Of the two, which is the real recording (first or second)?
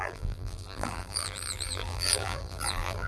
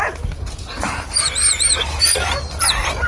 second